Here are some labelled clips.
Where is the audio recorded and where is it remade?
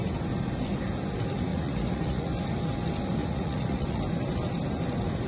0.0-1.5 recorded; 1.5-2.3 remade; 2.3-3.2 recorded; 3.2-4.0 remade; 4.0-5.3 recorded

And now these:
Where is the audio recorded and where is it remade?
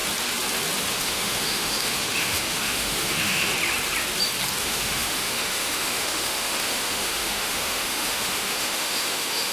0.0-0.9 recorded; 0.9-3.5 remade; 3.5-4.6 recorded; 4.6-9.5 remade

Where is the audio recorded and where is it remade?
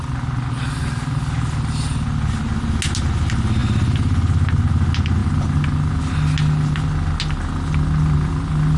0.0-8.8 recorded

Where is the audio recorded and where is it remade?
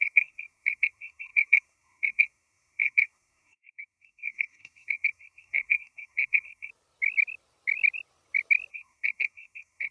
0.0-6.7 remade; 6.7-8.7 recorded; 8.7-9.9 remade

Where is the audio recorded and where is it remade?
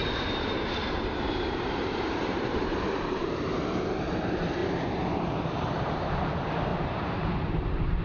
0.0-3.5 remade; 3.5-4.6 recorded; 4.6-5.7 remade; 5.7-6.7 recorded; 6.7-8.0 remade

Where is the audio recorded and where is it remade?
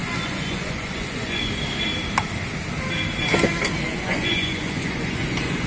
0.0-1.5 remade; 1.5-3.9 recorded; 3.9-5.7 remade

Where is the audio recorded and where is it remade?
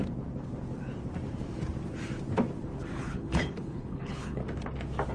0.0-3.0 recorded; 3.0-4.4 remade; 4.4-5.1 recorded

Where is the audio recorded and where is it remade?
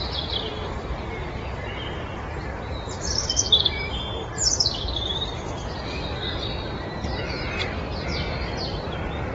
0.0-9.3 recorded